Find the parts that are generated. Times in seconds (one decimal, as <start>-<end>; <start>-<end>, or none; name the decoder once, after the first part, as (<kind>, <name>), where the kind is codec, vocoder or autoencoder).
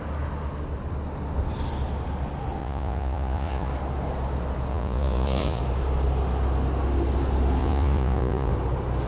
2.6-3.7 (vocoder, Vocos); 4.7-5.6; 7.6-8.5